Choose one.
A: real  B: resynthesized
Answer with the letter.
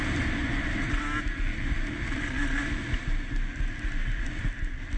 A